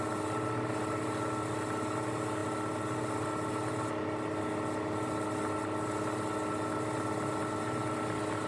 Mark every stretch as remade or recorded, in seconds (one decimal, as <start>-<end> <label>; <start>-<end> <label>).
0.0-8.5 recorded